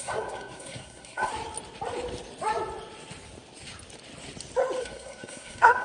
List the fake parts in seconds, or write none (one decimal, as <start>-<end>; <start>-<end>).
0.0-1.3; 4.8-5.8